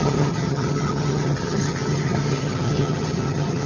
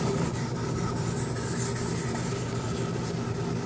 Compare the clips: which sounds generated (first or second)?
first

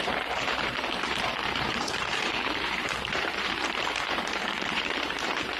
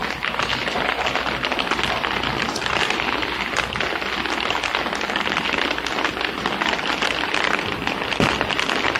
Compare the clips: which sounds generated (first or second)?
first